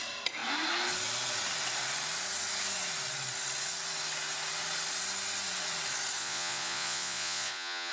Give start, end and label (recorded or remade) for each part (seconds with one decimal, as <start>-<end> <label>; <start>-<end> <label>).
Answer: 0.0-6.2 recorded; 6.2-7.9 remade